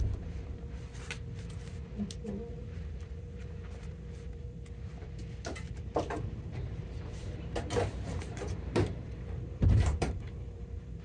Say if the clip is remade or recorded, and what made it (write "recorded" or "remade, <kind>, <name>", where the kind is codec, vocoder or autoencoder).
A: remade, vocoder, BigVGAN v2